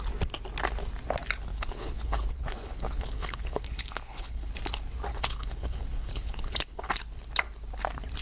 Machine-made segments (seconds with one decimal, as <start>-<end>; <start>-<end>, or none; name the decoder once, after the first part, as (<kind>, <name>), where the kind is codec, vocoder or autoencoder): 1.5-4.5 (codec, HILCodec); 5.1-6.9